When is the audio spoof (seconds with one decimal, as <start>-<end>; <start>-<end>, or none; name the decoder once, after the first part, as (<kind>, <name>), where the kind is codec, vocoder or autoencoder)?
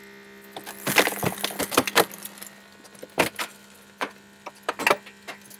none